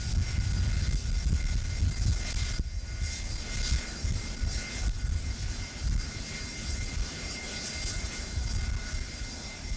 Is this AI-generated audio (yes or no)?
no